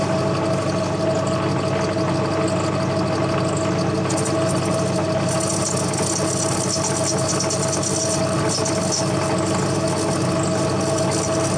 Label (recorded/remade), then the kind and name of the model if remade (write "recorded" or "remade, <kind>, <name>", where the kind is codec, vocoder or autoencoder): recorded